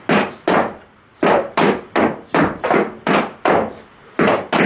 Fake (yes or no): no